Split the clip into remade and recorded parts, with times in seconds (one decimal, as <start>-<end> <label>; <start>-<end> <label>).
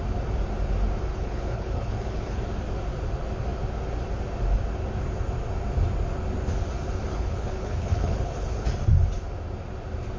0.0-1.1 recorded; 1.1-2.4 remade; 2.4-7.1 recorded; 7.1-8.6 remade; 8.6-10.2 recorded